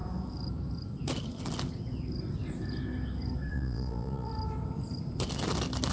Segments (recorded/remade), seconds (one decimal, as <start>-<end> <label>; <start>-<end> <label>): 0.0-3.5 recorded; 3.5-4.3 remade; 4.3-5.9 recorded